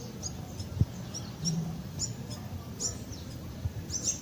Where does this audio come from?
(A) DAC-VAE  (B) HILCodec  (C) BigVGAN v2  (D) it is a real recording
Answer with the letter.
D